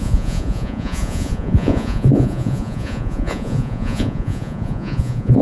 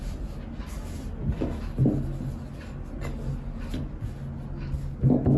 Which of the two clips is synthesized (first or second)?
first